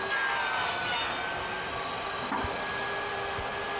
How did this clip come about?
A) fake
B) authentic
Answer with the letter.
B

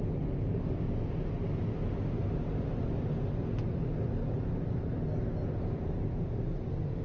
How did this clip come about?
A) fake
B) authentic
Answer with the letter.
B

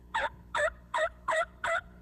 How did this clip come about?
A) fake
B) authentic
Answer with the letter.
A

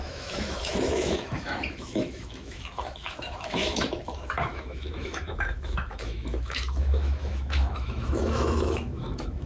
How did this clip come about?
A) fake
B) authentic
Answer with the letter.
A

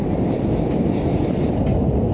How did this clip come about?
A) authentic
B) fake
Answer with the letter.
A